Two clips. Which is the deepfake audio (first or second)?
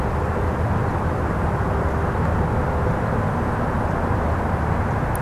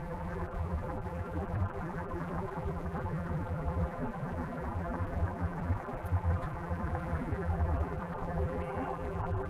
second